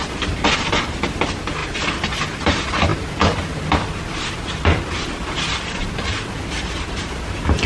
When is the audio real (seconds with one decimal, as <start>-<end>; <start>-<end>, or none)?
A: 0.0-7.7